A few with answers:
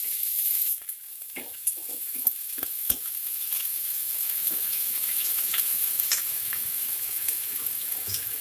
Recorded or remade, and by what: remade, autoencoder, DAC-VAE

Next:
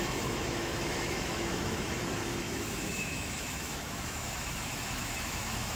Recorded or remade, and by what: remade, autoencoder, DAC-VAE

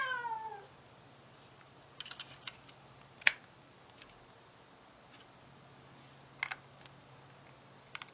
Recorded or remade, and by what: recorded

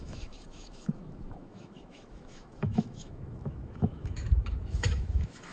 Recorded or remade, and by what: remade, autoencoder, DAC-VAE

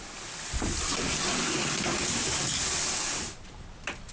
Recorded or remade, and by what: recorded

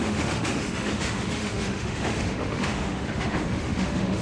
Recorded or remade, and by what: remade, autoencoder, DAC-VAE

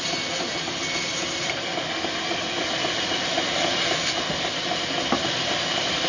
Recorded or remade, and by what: recorded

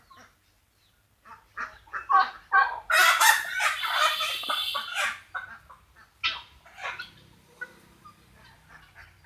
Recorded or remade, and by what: recorded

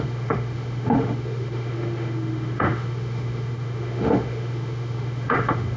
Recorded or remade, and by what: remade, autoencoder, DAC-VAE